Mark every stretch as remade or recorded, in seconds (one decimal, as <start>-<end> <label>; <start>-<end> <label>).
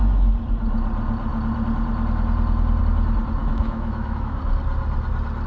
0.0-3.4 recorded; 3.4-4.4 remade; 4.4-5.5 recorded